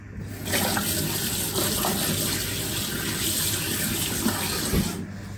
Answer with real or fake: real